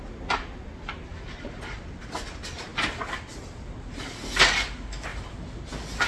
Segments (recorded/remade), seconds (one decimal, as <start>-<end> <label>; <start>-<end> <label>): 0.0-1.1 recorded; 1.1-1.7 remade; 1.7-6.1 recorded

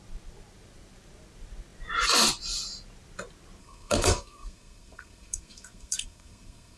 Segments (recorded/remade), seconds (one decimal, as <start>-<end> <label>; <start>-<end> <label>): 0.0-3.6 recorded; 3.6-6.8 remade

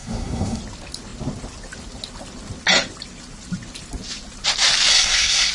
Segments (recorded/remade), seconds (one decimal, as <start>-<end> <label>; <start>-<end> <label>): 0.0-0.6 remade; 0.6-4.9 recorded; 4.9-5.5 remade

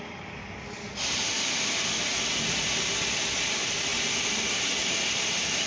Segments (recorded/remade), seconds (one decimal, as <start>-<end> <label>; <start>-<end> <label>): 0.0-5.7 recorded

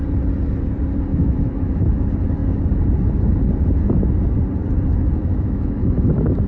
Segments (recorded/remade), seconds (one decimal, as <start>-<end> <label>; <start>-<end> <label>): 0.0-1.1 recorded; 1.1-1.7 remade; 1.7-5.2 recorded; 5.2-6.1 remade; 6.1-6.5 recorded

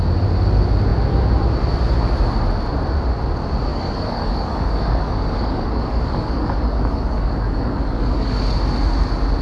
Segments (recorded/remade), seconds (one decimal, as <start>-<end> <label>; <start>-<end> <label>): 0.0-3.7 recorded; 3.7-8.4 remade; 8.4-9.4 recorded

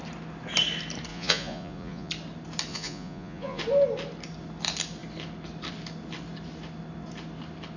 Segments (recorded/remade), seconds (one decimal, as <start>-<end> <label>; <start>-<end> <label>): 0.0-1.1 recorded; 1.1-2.1 remade; 2.1-2.7 recorded; 2.7-3.6 remade; 3.6-7.8 recorded

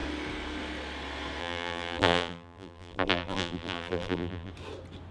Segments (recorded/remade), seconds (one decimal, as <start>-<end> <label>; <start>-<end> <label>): 0.0-1.4 recorded; 1.4-4.5 remade; 4.5-5.1 recorded